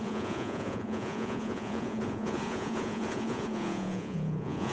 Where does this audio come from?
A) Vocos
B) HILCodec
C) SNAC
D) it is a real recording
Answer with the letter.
A